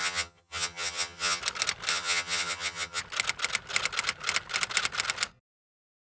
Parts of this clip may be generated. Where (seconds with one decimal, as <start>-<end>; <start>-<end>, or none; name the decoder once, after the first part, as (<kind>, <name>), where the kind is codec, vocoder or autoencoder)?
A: 0.0-1.4 (vocoder, HiFi-GAN); 1.9-3.0